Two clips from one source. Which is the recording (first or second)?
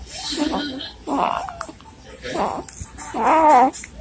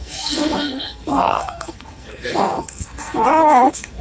first